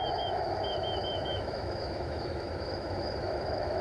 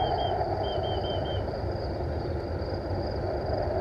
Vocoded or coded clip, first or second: first